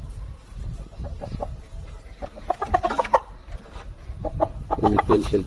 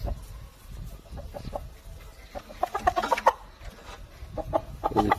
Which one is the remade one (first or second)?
first